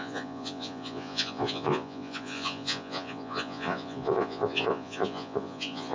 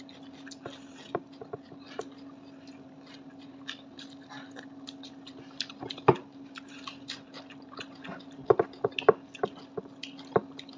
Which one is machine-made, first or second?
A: first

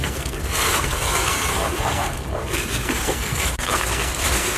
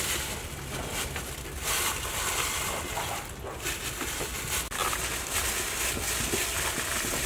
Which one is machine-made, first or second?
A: first